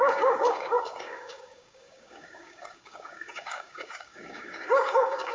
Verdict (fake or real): fake